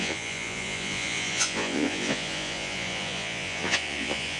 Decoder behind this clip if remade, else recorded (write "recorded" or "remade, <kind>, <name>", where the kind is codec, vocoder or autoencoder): remade, vocoder, Vocos